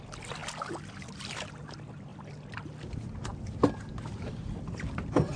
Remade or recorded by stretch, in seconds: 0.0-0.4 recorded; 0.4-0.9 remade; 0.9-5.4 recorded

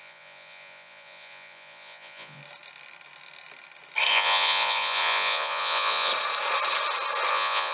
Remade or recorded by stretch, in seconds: 0.0-2.4 remade; 2.4-4.1 recorded; 4.1-6.1 remade; 6.1-7.3 recorded; 7.3-7.7 remade

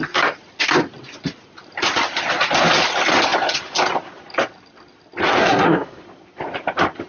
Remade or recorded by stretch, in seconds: 0.0-5.4 recorded; 5.4-6.0 remade; 6.0-7.1 recorded

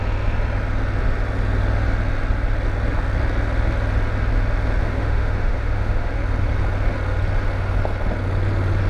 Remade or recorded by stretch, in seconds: 0.0-4.8 recorded; 4.8-6.1 remade; 6.1-8.9 recorded